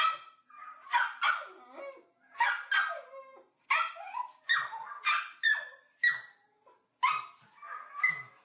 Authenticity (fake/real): real